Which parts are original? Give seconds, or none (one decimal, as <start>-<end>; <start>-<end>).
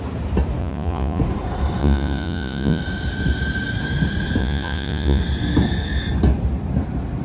0.0-0.6; 1.2-1.8; 2.8-4.4; 5.2-7.2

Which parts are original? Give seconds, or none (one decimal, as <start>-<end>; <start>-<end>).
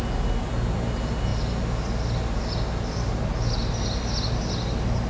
0.0-5.1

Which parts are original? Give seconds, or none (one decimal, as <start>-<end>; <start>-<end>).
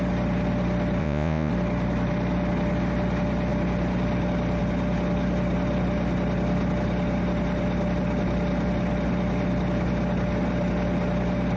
0.0-1.0; 1.5-11.6